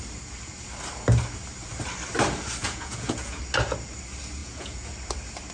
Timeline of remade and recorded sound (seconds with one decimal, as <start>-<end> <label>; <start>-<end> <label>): 0.0-2.6 recorded; 2.6-3.4 remade; 3.4-4.4 recorded; 4.4-4.9 remade; 4.9-5.5 recorded